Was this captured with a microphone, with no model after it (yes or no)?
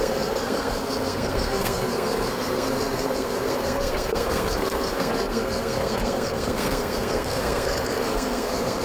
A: no